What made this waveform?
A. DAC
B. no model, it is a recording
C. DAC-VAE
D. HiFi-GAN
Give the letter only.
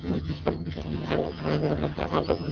D